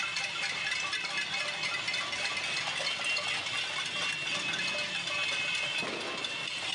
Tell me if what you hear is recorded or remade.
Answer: recorded